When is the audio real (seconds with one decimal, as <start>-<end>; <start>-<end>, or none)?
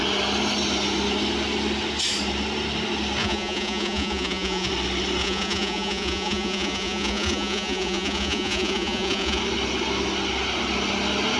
0.0-3.2; 4.7-5.2; 9.4-11.4